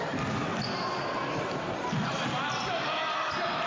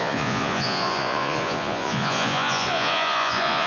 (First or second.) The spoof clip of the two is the second